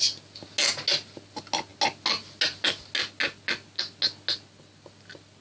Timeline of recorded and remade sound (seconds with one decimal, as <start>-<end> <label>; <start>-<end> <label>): 0.0-5.4 recorded